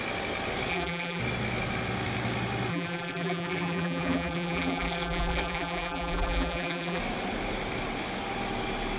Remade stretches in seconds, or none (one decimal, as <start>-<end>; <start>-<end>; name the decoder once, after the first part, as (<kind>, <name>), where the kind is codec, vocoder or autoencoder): 0.7-1.2 (vocoder, BigVGAN v2); 2.7-7.0